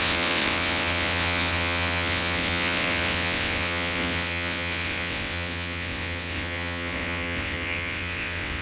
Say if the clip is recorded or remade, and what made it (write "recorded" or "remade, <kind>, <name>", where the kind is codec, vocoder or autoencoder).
remade, vocoder, WaveNeXt